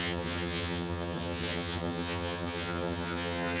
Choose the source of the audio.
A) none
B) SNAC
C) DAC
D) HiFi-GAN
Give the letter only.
D